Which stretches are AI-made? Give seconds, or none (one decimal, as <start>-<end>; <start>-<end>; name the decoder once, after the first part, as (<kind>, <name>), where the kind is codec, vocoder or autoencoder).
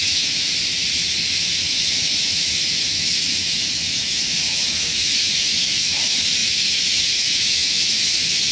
0.0-0.5 (autoencoder, DAC-VAE); 1.3-8.5